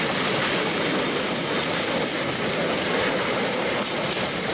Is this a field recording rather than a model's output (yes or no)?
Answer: no